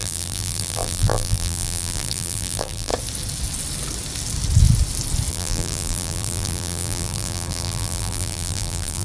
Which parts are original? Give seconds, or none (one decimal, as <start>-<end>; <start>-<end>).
2.9-5.3

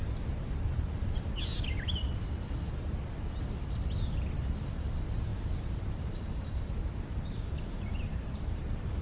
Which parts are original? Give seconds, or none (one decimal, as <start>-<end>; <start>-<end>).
0.0-5.3

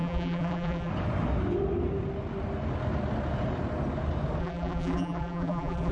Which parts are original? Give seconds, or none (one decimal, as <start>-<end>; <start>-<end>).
0.9-4.4

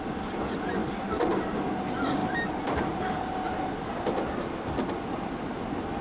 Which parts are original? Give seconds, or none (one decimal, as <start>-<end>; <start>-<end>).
0.0-2.2; 3.0-6.0

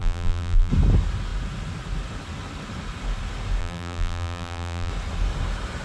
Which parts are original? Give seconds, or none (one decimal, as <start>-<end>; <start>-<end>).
0.7-3.6; 4.9-5.8

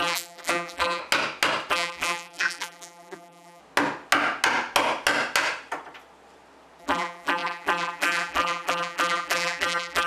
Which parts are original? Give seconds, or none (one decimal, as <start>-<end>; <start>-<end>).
1.0-1.7; 3.6-6.8